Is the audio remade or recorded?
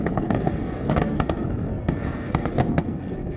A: remade